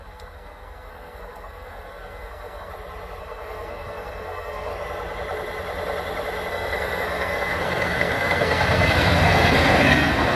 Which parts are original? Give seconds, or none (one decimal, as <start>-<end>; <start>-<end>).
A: 2.7-3.2; 4.7-6.5